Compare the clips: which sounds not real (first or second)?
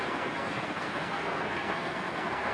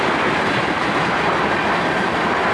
first